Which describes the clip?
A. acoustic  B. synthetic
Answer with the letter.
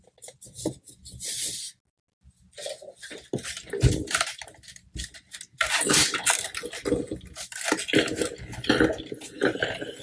A